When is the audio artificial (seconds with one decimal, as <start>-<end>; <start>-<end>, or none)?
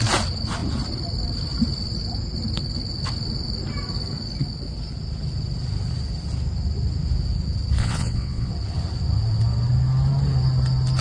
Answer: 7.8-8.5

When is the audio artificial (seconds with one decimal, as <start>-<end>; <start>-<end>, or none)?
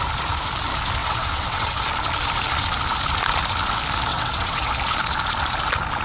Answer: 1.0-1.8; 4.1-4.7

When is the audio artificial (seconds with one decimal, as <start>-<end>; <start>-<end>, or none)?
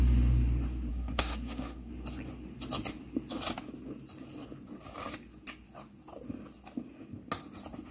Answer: 0.9-1.9